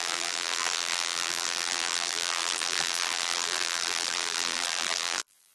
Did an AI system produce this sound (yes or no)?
yes